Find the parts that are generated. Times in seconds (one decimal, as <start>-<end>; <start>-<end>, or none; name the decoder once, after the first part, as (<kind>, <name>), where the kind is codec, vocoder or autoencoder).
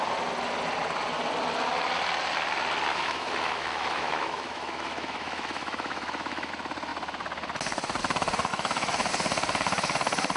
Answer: 2.9-6.5 (autoencoder, DAC-VAE); 8.5-9.1